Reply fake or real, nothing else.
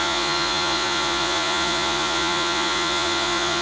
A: fake